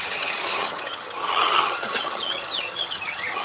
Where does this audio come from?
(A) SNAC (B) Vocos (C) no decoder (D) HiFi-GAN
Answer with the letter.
D